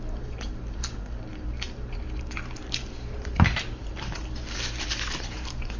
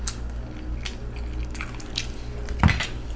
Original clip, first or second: second